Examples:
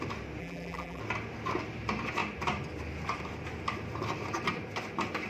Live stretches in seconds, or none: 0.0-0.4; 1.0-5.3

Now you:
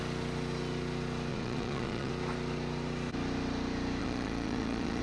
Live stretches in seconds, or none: 0.0-1.3; 2.1-4.0

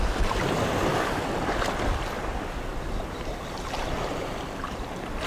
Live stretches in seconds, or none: 0.0-5.3